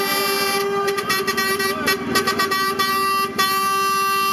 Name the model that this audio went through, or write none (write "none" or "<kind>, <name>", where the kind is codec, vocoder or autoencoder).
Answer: none